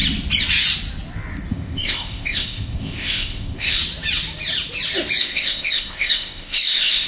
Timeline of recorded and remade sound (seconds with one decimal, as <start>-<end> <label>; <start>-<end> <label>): 0.0-1.5 recorded; 1.5-3.8 remade; 3.8-5.2 recorded; 5.2-7.1 remade